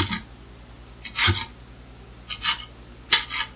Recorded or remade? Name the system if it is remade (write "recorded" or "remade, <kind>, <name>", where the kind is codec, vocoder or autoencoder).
recorded